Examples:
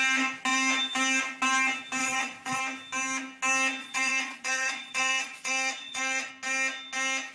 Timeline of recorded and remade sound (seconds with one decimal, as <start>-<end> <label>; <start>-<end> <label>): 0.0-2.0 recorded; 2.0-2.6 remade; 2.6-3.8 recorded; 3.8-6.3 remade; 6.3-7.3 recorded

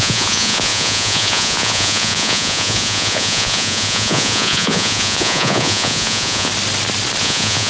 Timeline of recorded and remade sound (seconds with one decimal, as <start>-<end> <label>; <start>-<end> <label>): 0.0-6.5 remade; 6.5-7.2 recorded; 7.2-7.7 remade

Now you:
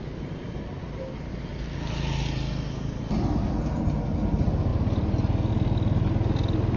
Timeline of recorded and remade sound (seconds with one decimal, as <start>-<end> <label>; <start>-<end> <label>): 0.0-6.8 recorded

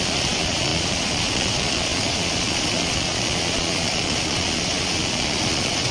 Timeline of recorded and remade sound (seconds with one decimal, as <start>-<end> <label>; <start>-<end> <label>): 0.0-5.9 remade